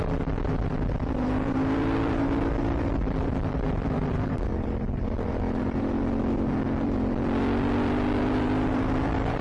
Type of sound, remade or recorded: remade